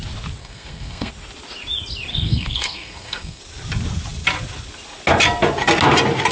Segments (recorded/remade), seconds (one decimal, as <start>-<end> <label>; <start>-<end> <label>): 0.0-0.4 recorded; 0.4-1.1 remade; 1.1-2.1 recorded; 2.1-3.4 remade; 3.4-6.3 recorded